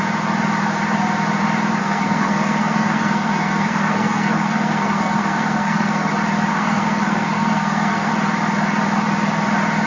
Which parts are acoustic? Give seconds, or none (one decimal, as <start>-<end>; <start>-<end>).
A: 0.0-1.8; 6.1-6.5; 8.1-9.9